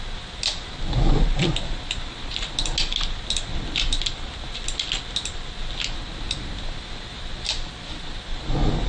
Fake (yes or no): no